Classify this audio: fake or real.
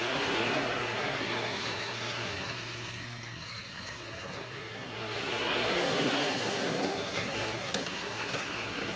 fake